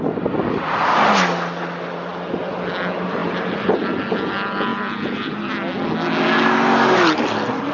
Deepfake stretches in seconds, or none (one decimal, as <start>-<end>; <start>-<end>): 3.2-3.7